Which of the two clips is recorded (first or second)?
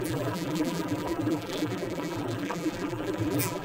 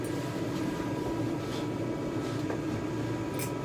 second